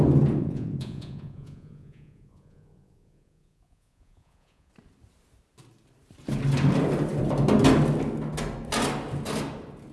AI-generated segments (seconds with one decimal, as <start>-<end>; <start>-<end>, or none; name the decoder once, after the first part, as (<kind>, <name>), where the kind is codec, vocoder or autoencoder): 0.4-4.7 (vocoder, Vocos)